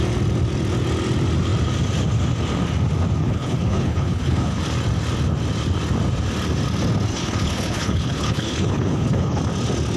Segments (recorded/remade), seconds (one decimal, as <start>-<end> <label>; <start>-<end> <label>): 0.0-3.2 recorded; 3.2-4.6 remade; 4.6-7.1 recorded; 7.1-9.4 remade; 9.4-10.0 recorded